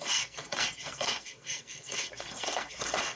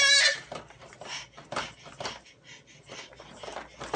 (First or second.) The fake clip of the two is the first